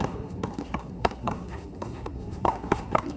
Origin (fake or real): fake